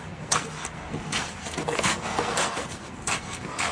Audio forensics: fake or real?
fake